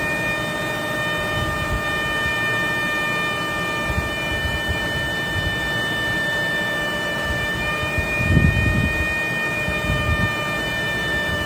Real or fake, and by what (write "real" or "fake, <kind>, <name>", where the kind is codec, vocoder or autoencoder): real